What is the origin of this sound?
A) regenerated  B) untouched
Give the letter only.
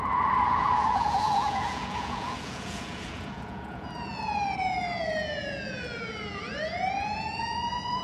A